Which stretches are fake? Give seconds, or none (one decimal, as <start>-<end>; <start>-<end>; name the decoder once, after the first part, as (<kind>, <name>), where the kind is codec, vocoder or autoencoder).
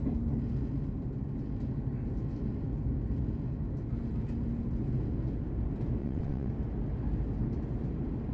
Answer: 6.0-6.5 (vocoder, WaveNeXt)